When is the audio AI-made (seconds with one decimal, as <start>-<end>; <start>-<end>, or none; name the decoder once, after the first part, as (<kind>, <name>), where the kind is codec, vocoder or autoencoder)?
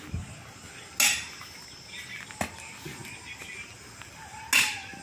none